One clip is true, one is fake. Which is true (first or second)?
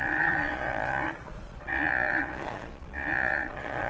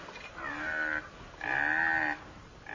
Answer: second